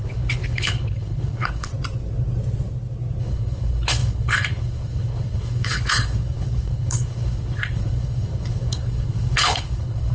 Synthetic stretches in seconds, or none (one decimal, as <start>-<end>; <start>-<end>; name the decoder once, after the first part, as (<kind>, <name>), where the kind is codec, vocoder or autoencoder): 0.0-1.7 (codec, HILCodec); 3.2-10.1